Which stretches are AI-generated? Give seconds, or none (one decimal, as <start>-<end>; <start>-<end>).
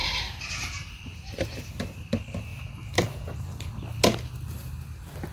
0.0-1.7